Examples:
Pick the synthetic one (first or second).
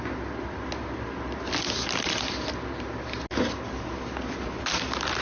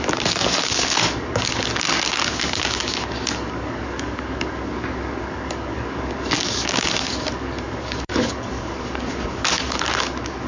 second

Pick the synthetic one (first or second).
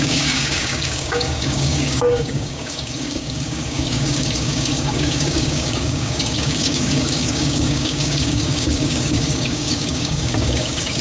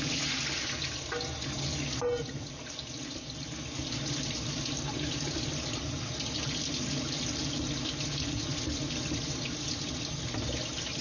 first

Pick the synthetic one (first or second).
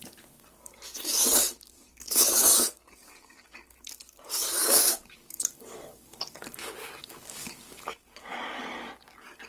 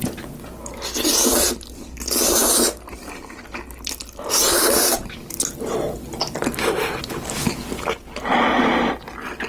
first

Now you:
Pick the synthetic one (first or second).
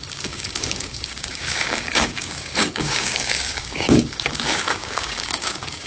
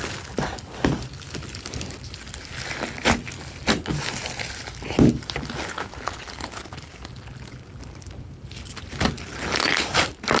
first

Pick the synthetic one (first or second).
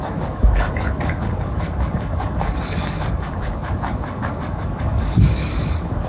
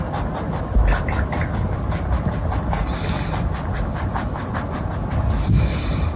first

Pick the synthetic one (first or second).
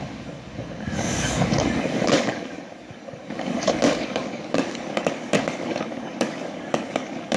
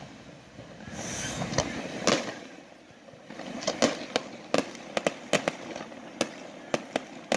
first